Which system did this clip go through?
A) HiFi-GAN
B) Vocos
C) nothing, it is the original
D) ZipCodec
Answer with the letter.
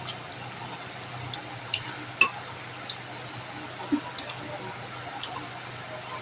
C